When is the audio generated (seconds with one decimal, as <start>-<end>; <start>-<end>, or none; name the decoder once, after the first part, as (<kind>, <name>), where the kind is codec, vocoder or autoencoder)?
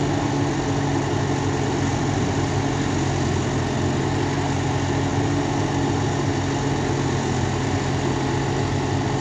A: 1.9-2.5 (vocoder, BigVGAN v2)